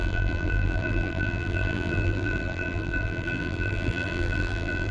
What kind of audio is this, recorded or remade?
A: remade